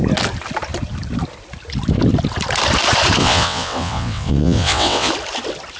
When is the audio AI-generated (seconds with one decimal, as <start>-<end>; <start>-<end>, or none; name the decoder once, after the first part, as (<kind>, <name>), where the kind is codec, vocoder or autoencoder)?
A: 3.2-5.1 (vocoder, WaveNeXt)